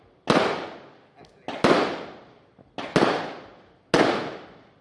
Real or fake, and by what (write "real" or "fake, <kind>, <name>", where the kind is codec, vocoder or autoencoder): real